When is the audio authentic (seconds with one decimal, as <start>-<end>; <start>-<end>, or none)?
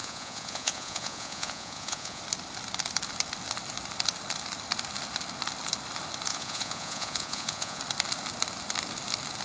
2.2-6.3; 7.8-9.4